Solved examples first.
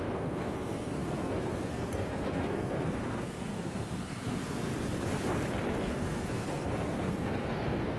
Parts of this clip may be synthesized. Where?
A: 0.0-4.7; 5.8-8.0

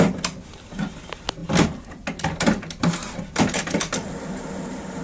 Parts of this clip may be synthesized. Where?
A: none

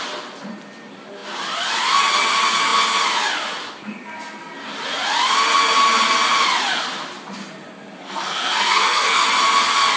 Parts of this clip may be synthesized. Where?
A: 8.0-9.2